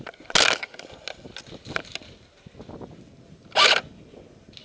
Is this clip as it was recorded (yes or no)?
yes